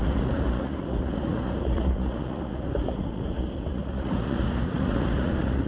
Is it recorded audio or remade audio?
remade